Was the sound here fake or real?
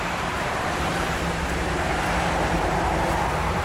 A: fake